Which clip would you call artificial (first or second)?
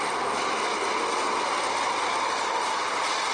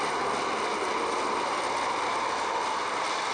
second